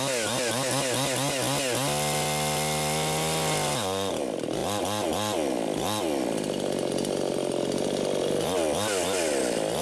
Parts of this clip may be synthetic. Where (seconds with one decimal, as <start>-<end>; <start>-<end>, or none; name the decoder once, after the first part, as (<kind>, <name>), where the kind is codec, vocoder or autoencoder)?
none